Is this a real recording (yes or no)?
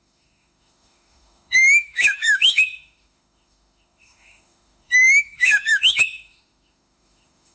no